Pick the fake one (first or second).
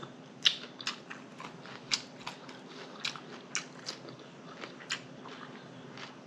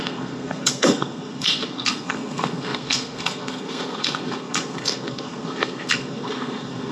second